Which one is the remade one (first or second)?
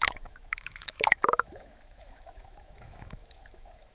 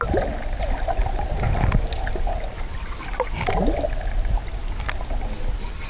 first